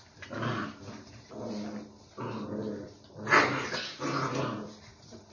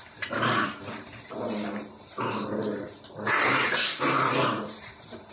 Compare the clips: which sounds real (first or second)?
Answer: first